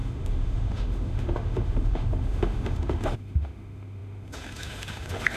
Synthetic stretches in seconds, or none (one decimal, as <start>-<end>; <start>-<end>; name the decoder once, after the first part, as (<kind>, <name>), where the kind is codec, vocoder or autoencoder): 0.0-5.4 (autoencoder, DAC-VAE)